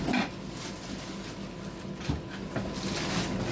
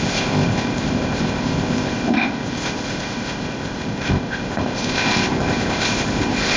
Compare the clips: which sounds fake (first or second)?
second